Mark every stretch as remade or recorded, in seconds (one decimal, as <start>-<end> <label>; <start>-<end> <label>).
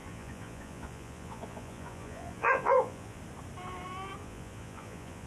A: 0.0-3.2 remade; 3.2-4.2 recorded; 4.2-5.3 remade